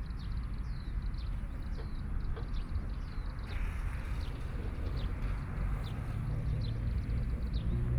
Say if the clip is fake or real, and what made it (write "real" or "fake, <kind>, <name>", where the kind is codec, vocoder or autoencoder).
real